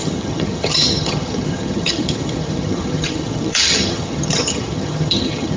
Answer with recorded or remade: remade